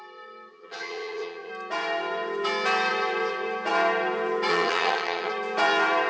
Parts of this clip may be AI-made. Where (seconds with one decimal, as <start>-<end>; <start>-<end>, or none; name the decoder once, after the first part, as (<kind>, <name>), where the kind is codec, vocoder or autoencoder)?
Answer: 0.5-1.5 (vocoder, HiFi-GAN); 4.5-5.3